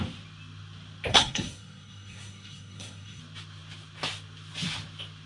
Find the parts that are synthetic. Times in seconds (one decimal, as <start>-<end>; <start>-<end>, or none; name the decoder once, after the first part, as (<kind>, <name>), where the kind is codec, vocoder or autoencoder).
1.1-3.2 (codec, SNAC)